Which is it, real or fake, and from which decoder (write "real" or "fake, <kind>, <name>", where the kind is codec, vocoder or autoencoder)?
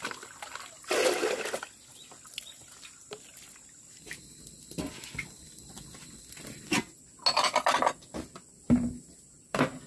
real